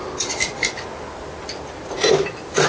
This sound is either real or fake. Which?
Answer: real